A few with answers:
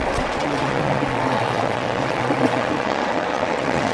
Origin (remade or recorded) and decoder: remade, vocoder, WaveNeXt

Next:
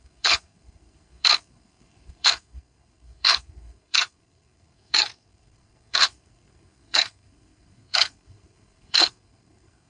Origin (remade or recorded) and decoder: remade, codec, SNAC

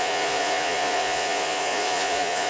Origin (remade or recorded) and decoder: remade, vocoder, Vocos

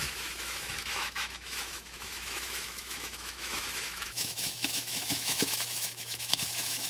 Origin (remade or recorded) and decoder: remade, autoencoder, DAC-VAE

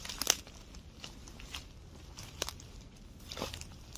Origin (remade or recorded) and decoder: recorded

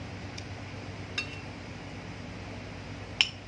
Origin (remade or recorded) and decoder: recorded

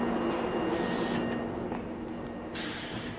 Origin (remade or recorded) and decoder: recorded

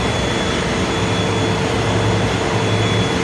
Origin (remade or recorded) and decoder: recorded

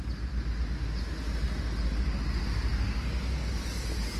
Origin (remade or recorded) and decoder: recorded